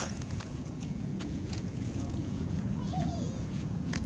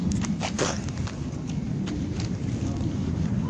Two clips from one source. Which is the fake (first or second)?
first